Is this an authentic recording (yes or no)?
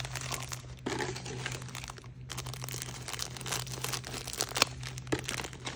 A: yes